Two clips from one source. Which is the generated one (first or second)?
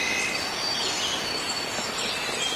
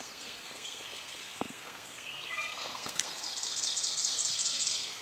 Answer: second